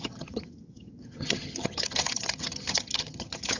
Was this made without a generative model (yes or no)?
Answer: no